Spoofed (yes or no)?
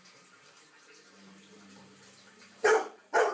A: yes